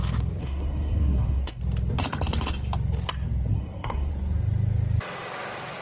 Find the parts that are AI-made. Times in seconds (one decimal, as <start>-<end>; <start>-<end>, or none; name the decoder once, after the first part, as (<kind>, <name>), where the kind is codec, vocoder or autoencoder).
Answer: 0.4-1.6 (codec, SNAC); 3.5-4.1